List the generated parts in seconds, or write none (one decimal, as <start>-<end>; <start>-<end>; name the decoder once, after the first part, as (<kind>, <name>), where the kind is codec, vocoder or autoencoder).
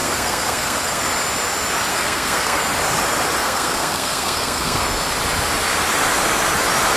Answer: 0.0-1.0 (codec, SNAC); 1.9-2.6; 3.4-4.8